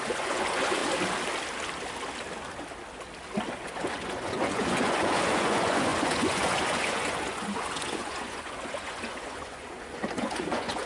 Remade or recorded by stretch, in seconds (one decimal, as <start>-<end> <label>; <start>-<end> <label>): 0.0-0.8 remade; 0.8-3.5 recorded; 3.5-10.9 remade